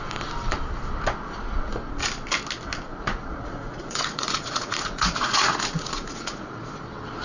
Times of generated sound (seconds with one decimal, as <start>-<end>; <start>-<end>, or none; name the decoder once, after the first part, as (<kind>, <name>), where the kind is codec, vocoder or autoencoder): 2.9-6.7 (vocoder, Vocos)